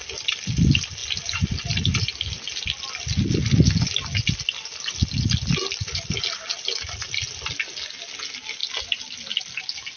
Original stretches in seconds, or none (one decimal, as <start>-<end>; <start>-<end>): 0.0-10.0